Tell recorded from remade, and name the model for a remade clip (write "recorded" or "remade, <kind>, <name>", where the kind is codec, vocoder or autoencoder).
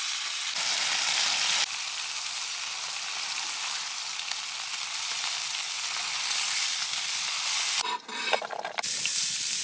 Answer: recorded